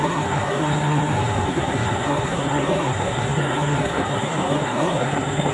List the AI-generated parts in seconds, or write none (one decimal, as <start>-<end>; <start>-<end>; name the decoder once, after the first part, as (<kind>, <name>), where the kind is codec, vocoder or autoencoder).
0.0-5.5 (codec, SNAC)